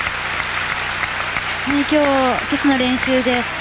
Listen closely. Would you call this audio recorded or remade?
recorded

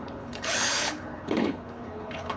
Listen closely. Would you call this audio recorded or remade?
remade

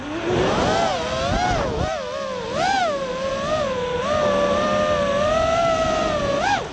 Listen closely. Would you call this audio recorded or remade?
recorded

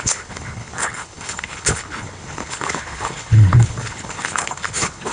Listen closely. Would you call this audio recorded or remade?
remade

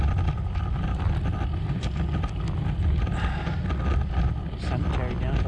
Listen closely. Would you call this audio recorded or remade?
recorded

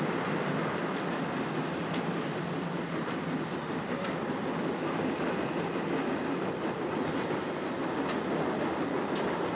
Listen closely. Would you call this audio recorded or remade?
recorded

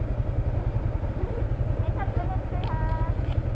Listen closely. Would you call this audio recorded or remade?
recorded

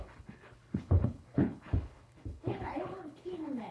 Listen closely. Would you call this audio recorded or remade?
remade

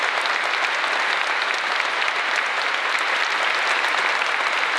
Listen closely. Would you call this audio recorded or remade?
recorded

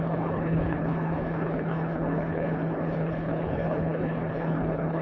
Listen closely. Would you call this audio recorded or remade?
remade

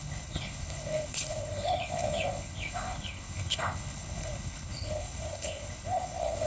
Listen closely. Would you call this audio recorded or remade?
remade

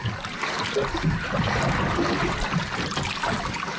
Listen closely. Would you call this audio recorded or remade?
recorded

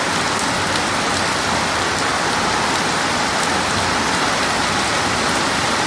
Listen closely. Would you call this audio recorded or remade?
recorded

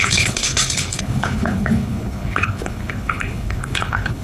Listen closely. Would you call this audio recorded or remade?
remade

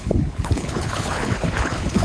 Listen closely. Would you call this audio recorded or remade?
remade